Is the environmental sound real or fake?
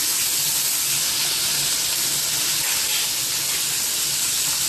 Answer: real